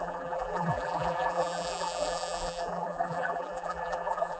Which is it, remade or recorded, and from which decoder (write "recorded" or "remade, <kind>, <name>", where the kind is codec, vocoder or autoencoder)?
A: remade, vocoder, BigVGAN v2